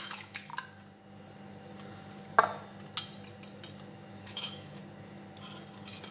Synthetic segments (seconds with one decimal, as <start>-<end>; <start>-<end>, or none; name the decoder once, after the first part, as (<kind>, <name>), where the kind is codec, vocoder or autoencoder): 0.0-0.5 (autoencoder, DAC-VAE); 4.2-4.8